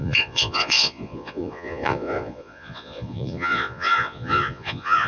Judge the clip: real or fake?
fake